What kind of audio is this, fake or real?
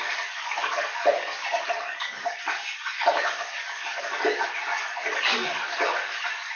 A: fake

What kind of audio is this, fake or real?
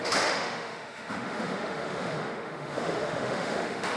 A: fake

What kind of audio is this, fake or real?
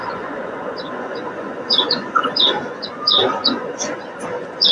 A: fake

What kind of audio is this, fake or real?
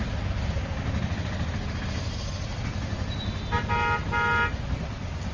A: real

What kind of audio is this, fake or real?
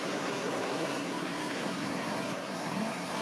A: fake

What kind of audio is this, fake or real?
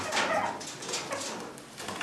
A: real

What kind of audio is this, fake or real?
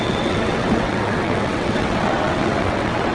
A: fake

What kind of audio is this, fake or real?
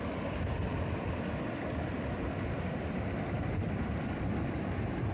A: real